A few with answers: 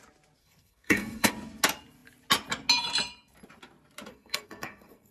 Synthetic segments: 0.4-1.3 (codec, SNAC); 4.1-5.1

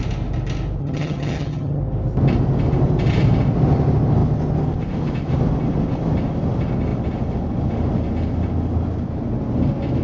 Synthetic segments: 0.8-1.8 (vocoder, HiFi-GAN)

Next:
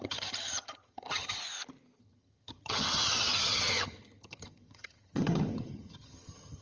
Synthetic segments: 0.0-1.4 (vocoder, HiFi-GAN); 2.0-6.6